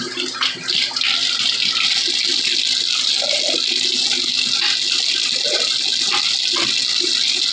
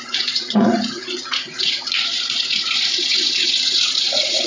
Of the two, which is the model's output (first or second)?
second